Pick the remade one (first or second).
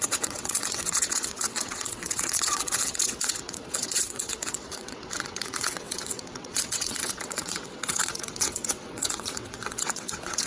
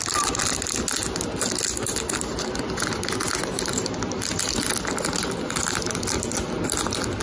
first